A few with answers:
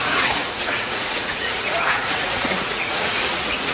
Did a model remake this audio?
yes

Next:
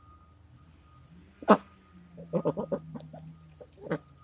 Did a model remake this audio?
no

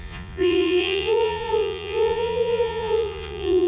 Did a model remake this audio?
yes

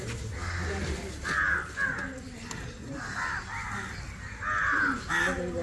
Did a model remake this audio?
no